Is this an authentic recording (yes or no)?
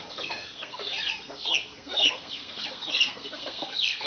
no